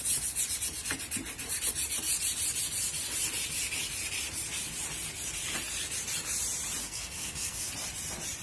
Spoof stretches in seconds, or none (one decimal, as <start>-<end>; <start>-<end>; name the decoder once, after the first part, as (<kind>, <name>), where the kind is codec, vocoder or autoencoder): 6.8-7.7 (codec, SNAC)